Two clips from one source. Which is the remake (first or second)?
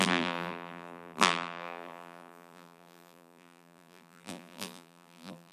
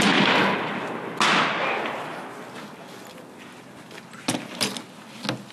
first